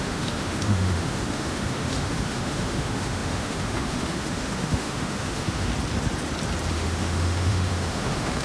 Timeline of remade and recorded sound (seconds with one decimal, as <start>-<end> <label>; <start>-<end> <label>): 0.0-5.7 remade; 5.7-6.7 recorded; 6.7-8.4 remade